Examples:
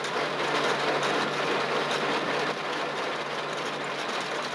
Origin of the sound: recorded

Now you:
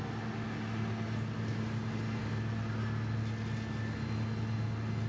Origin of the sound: recorded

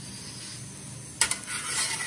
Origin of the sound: recorded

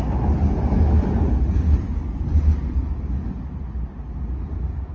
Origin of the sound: recorded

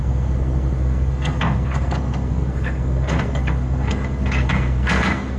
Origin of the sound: remade